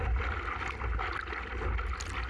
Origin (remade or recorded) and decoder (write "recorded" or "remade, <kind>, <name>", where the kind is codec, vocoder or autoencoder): recorded